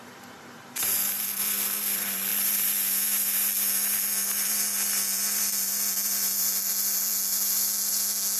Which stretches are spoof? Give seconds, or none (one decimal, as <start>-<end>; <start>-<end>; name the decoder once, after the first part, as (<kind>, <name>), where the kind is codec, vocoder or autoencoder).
0.0-8.4 (vocoder, BigVGAN v2)